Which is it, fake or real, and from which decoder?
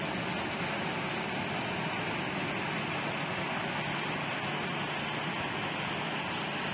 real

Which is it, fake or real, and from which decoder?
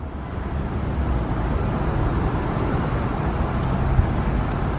real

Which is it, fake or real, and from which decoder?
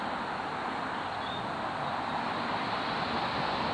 real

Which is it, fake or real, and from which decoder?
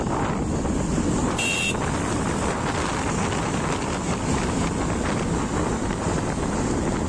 real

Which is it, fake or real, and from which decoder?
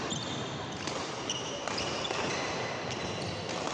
real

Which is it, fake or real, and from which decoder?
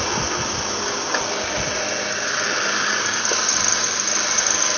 real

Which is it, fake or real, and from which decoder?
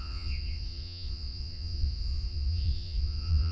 fake, vocoder, Vocos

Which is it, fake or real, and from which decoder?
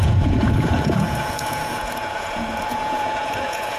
fake, vocoder, Vocos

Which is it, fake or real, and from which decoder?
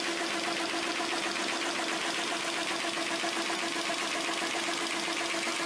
real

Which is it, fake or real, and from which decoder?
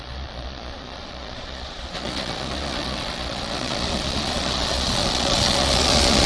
fake, vocoder, Vocos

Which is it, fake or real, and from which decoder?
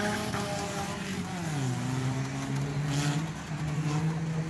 real